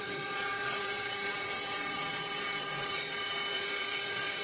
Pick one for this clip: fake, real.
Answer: fake